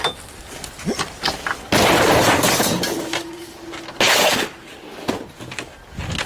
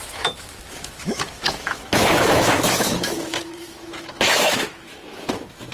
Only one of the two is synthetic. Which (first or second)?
second